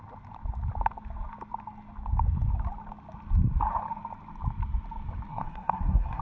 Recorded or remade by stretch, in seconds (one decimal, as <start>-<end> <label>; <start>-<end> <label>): 0.0-5.3 recorded; 5.3-6.2 remade